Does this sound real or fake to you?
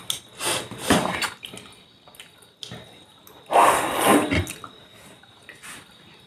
real